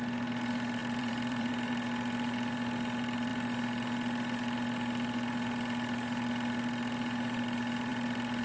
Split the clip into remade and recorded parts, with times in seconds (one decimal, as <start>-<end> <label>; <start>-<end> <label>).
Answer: 0.0-0.8 recorded; 0.8-1.5 remade; 1.5-8.4 recorded